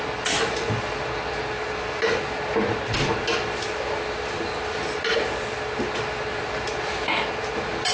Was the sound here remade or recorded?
recorded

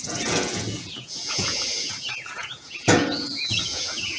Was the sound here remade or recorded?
remade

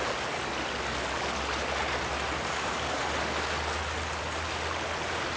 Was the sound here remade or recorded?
recorded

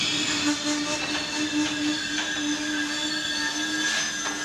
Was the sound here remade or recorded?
recorded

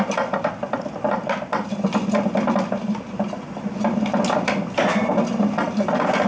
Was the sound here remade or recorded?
recorded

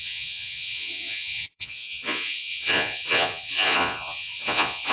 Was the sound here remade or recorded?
remade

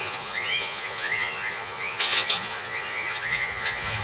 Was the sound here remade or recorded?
remade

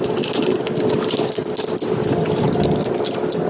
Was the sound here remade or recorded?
recorded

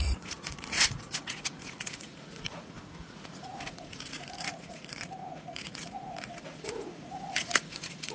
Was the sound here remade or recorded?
remade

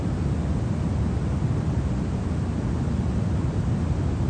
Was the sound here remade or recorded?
recorded